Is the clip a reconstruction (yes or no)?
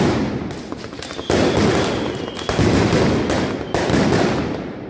no